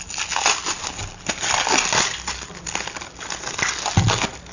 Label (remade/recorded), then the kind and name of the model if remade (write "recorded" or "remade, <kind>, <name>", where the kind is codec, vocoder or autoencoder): recorded